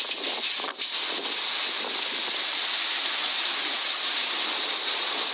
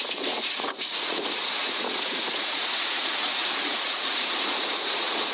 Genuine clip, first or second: first